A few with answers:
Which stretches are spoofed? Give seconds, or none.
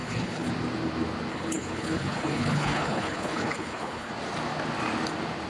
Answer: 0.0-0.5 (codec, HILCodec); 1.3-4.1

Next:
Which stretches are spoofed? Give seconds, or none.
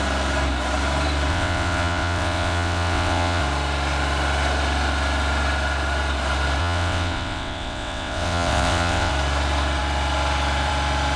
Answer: 1.3-3.4 (vocoder, WaveNeXt); 6.6-9.1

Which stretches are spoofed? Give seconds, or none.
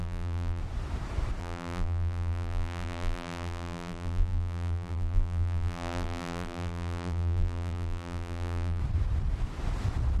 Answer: 0.0-0.6 (vocoder, BigVGAN v2); 1.4-8.8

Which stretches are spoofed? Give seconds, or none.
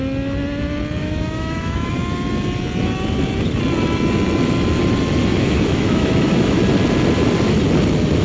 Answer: 1.0-1.9 (autoencoder, DAC-VAE); 5.3-6.6